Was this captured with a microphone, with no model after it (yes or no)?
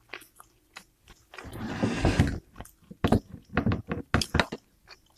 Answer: yes